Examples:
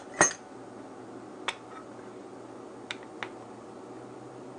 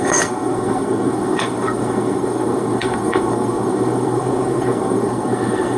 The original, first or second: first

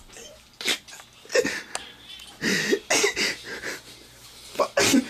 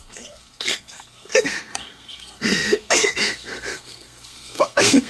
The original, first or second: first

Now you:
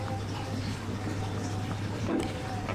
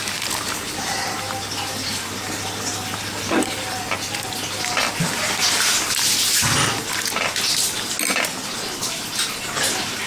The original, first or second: second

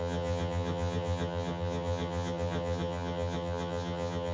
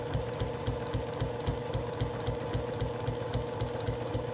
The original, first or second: second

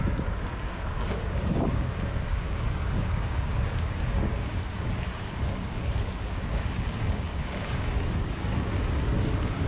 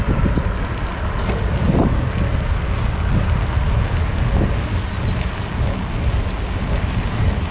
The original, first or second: second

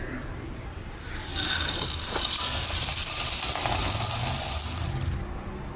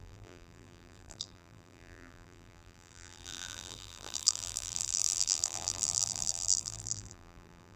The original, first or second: first